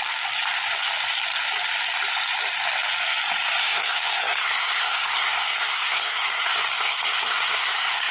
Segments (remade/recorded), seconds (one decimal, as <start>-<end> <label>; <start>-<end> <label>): 0.0-3.6 recorded; 3.6-8.1 remade